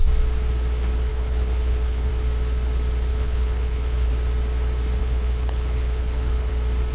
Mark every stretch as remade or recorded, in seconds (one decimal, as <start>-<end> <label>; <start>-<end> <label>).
0.0-1.1 recorded; 1.1-2.1 remade; 2.1-3.1 recorded; 3.1-4.1 remade; 4.1-5.0 recorded; 5.0-6.5 remade; 6.5-6.9 recorded